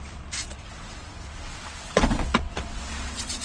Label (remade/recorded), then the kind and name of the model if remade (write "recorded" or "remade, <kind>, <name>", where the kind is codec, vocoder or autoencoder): remade, vocoder, WaveNeXt